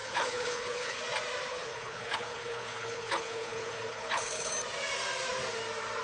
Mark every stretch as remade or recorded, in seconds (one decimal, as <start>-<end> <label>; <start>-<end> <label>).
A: 0.0-1.0 remade; 1.0-1.5 recorded; 1.5-4.5 remade; 4.5-6.0 recorded